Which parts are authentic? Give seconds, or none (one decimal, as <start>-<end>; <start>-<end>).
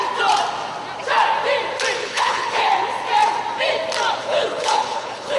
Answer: 0.0-2.0; 2.7-4.2